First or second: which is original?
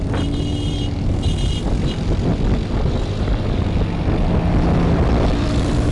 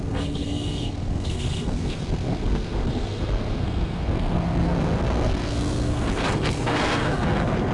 first